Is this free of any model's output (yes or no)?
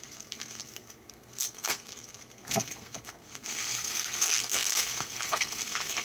no